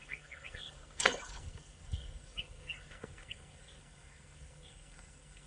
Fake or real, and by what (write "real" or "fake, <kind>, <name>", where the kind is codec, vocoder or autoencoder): fake, codec, SNAC